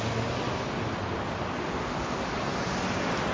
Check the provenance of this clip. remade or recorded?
recorded